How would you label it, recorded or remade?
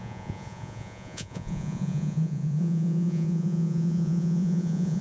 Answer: remade